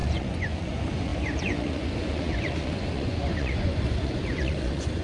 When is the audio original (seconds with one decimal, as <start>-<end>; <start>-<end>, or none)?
none